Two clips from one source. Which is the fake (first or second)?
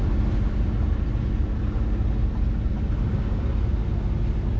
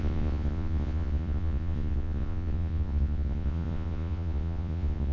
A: second